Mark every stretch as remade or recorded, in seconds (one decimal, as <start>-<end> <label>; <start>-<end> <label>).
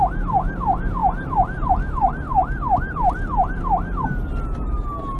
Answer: 0.0-5.2 recorded